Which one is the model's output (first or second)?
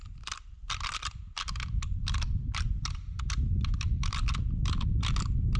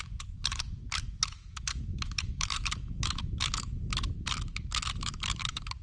second